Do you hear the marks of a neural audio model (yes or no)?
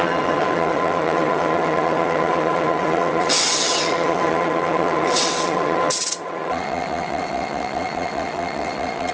yes